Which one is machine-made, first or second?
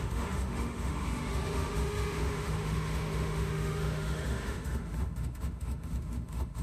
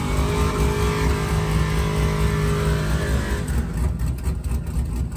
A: first